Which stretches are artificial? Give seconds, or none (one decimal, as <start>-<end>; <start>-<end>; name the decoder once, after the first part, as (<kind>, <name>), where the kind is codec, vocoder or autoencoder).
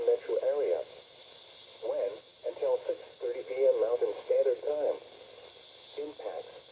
none